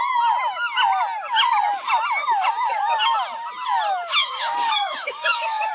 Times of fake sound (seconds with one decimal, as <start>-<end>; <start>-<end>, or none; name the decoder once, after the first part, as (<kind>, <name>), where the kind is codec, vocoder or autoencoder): 4.2-5.7 (codec, DAC)